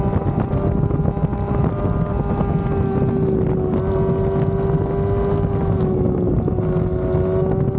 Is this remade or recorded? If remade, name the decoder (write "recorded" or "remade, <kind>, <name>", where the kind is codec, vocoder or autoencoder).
recorded